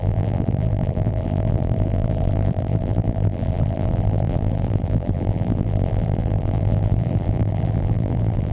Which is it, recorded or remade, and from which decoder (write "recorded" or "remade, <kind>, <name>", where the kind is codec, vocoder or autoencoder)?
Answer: remade, vocoder, BigVGAN v2